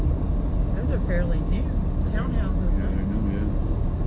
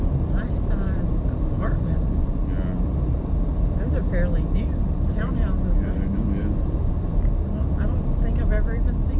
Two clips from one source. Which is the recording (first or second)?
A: first